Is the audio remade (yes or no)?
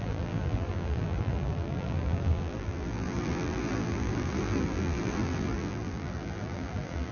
yes